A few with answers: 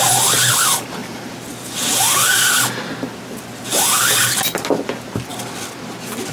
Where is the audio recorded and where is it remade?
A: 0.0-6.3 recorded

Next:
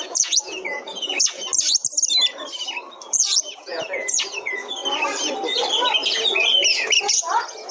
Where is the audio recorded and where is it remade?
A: 0.0-1.5 remade; 1.5-3.1 recorded; 3.1-4.8 remade; 4.8-7.0 recorded; 7.0-7.7 remade

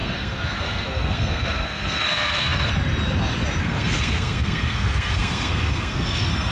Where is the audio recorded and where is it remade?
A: 0.0-2.7 remade; 2.7-3.6 recorded; 3.6-6.5 remade

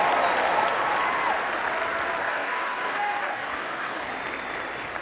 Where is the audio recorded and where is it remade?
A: 0.0-2.2 recorded; 2.2-4.1 remade; 4.1-5.0 recorded

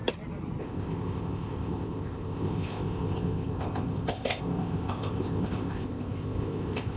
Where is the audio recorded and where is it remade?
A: 0.0-0.6 recorded; 0.6-7.0 remade

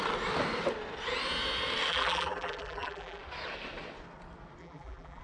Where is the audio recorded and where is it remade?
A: 0.0-1.9 recorded; 1.9-3.2 remade; 3.2-4.6 recorded; 4.6-5.2 remade

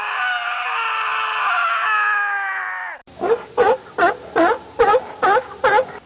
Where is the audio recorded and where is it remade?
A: 0.0-6.1 recorded

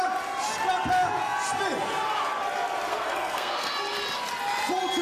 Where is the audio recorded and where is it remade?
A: 0.0-2.9 recorded; 2.9-3.7 remade; 3.7-5.0 recorded